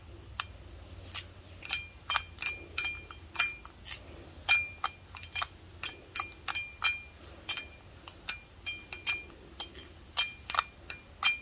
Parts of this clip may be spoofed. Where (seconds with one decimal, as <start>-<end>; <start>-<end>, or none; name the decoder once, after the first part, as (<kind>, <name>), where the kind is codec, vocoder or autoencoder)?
none